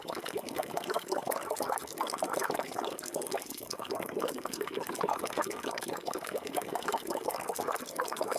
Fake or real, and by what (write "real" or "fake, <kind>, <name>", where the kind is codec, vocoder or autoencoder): fake, codec, SNAC